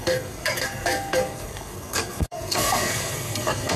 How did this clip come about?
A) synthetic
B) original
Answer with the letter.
A